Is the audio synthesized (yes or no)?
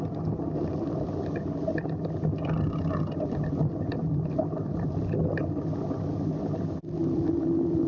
no